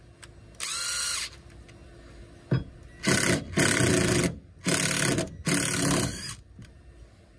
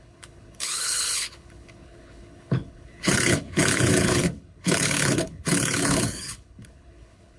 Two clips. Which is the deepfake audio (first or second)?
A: second